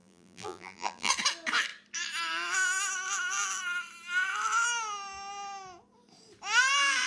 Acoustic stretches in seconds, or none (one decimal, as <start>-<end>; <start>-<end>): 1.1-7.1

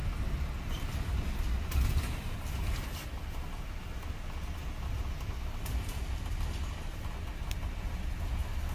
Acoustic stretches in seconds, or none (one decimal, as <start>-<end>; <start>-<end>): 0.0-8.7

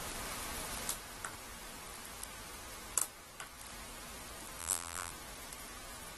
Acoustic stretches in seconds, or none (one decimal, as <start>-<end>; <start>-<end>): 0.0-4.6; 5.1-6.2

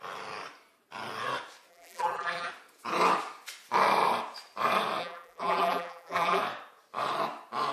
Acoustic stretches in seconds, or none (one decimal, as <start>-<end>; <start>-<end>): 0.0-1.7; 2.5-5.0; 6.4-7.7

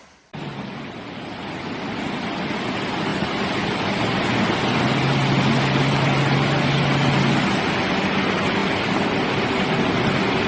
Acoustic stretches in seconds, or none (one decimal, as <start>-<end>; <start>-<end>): 0.0-10.5

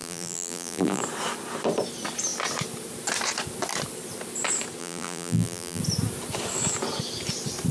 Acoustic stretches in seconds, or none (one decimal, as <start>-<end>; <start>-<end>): 1.0-4.8; 5.8-7.7

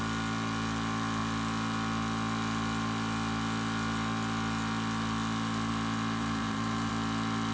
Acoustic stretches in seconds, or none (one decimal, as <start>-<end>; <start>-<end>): 0.0-6.2; 6.9-7.5

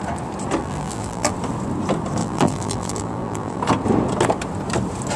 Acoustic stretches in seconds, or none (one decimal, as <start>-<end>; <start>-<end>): 0.0-0.6; 1.3-2.2; 3.6-5.2